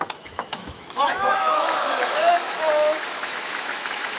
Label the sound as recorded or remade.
remade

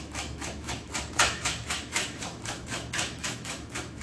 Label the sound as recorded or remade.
remade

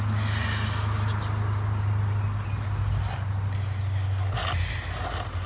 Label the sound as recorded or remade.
recorded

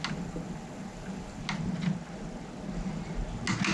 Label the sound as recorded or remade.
recorded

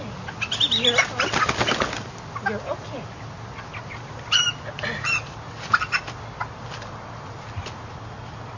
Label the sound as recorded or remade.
recorded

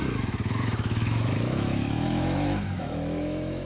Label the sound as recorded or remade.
remade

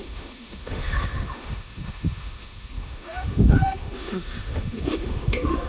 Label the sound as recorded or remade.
remade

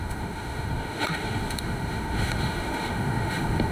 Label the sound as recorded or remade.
remade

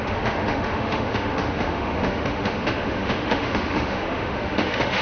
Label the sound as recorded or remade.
remade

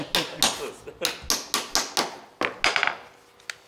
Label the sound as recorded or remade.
recorded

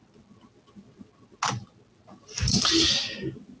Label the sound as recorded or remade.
recorded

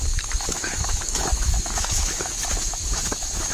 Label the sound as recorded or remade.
remade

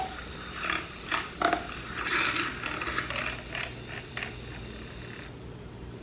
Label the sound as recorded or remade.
recorded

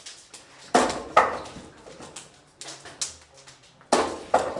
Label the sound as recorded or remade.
recorded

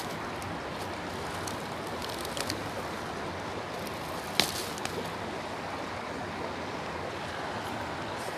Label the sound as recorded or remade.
recorded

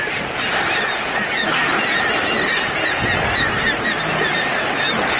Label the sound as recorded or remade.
recorded